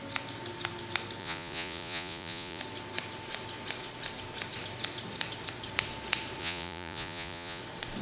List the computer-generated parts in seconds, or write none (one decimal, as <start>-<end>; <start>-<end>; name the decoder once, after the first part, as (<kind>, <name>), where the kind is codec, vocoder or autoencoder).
1.2-2.6 (vocoder, Vocos); 6.4-7.6